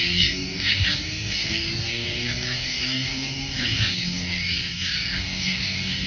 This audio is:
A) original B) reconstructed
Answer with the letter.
B